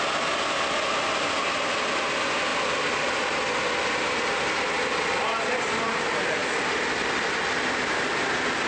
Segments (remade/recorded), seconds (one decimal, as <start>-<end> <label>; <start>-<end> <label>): 0.0-8.7 recorded